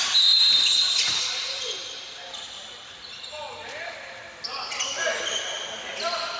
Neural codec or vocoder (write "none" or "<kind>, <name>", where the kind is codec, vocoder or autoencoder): none